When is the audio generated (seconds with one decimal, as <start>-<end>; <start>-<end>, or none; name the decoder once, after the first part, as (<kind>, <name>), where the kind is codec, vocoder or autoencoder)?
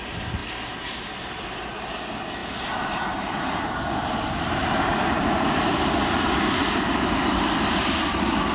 2.4-5.9 (vocoder, BigVGAN v2)